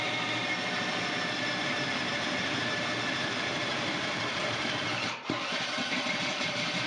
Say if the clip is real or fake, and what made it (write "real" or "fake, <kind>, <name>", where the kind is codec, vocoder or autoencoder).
fake, vocoder, BigVGAN v2